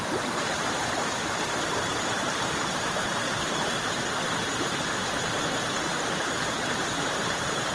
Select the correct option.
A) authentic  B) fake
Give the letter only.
B